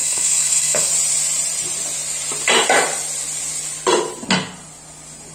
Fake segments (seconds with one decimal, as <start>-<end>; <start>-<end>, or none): 0.0-0.9